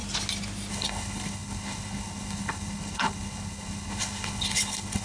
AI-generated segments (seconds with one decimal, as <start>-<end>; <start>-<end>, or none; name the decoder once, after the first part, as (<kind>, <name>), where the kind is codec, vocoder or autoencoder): 0.7-5.0 (codec, HILCodec)

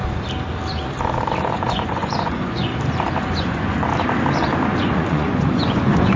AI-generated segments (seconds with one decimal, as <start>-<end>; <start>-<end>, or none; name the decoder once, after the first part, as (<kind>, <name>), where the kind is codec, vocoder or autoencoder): 1.5-2.7 (vocoder, Vocos); 3.4-3.9; 4.8-6.2